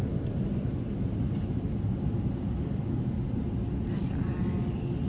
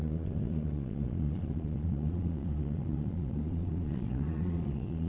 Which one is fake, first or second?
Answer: second